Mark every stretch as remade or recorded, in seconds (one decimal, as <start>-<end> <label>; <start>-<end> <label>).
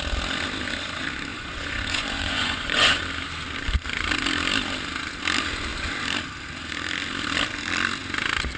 0.0-1.3 recorded; 1.3-3.0 remade; 3.0-8.6 recorded